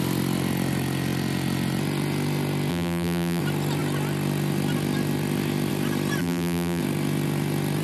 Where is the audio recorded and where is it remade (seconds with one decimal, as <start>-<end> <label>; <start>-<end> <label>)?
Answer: 0.0-2.7 recorded; 2.7-3.4 remade; 3.4-6.2 recorded; 6.2-6.8 remade; 6.8-7.8 recorded